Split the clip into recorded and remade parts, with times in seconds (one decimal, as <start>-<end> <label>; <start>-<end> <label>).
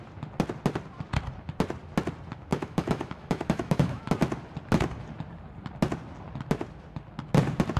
0.0-2.5 recorded; 2.5-4.0 remade; 4.0-7.8 recorded